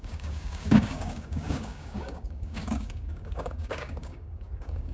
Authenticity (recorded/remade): remade